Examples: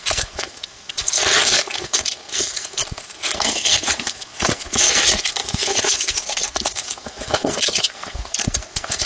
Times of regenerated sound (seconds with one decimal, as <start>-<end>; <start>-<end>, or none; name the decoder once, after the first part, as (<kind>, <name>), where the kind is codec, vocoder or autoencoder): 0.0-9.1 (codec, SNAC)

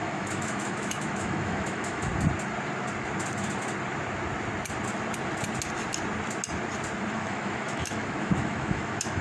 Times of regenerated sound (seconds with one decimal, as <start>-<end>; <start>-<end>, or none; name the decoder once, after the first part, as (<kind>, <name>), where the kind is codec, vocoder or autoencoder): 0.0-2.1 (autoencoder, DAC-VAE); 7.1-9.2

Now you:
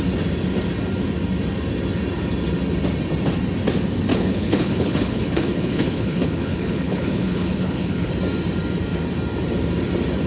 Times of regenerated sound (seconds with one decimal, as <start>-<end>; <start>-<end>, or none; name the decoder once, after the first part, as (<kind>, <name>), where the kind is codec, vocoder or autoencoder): 4.1-8.1 (codec, HILCodec)